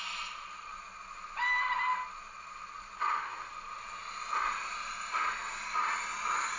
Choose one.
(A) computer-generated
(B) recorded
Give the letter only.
B